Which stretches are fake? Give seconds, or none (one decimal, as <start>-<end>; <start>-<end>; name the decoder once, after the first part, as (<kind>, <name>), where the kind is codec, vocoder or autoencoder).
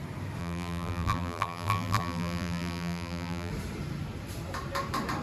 0.4-3.5 (vocoder, BigVGAN v2)